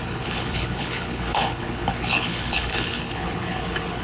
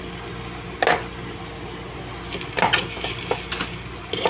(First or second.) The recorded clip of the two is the second